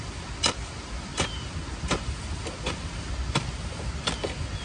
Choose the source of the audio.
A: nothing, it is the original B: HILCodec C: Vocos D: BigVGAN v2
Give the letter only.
A